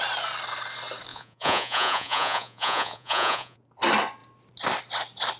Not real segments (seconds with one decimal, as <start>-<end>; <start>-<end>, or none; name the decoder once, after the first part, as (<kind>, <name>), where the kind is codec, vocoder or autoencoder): 1.1-3.6 (vocoder, Vocos)